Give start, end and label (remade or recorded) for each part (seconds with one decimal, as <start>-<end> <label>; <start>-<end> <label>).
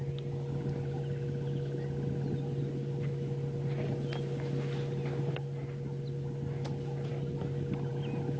0.0-8.4 recorded